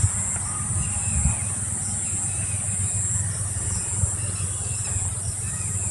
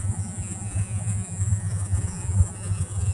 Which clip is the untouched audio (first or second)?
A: first